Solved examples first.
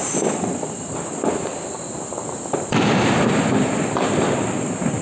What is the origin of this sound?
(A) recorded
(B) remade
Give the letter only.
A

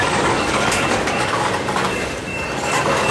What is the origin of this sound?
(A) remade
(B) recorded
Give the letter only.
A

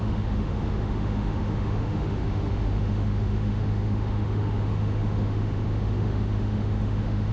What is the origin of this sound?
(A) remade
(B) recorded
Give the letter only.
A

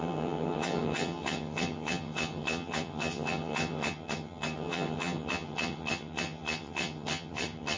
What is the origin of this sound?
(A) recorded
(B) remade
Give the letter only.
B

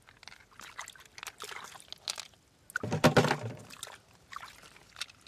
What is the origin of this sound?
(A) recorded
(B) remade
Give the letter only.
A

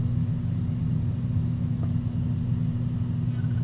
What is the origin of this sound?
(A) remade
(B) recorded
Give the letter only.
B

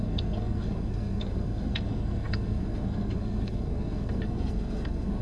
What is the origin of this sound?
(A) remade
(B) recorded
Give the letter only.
A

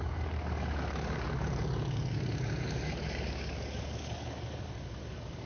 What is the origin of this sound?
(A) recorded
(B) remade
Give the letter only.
B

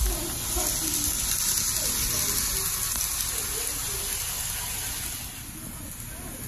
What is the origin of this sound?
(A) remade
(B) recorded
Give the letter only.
B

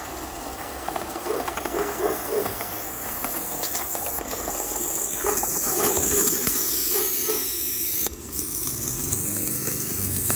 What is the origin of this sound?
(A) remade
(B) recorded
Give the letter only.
A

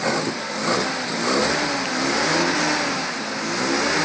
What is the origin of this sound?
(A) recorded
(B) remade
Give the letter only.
A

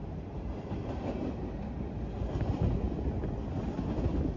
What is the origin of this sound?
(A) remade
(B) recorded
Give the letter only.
B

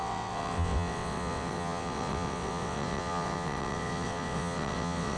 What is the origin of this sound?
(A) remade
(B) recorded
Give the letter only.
A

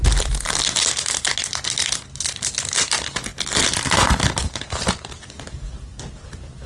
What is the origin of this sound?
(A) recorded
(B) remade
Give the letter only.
A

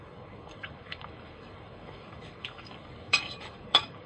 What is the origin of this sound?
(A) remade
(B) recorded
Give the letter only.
A